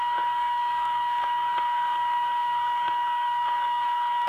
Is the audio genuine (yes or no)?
no